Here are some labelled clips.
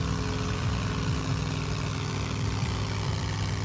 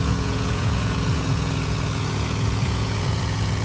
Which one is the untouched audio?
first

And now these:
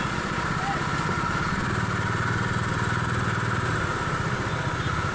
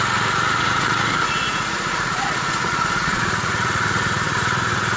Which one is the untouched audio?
first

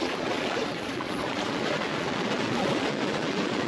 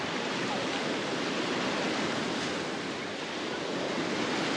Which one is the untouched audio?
second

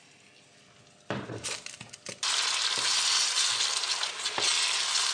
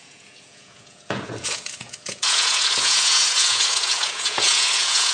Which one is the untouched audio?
first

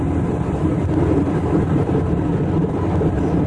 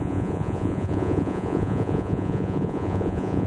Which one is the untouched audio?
first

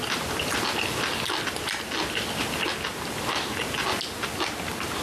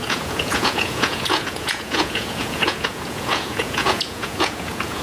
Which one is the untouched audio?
first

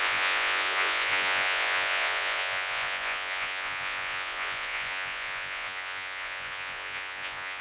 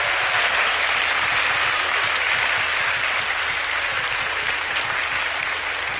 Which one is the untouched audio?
second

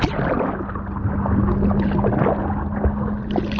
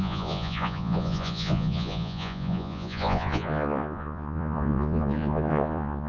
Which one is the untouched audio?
first